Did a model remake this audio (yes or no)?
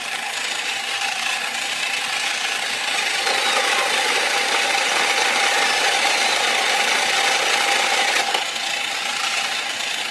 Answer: no